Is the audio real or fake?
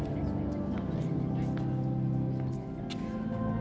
real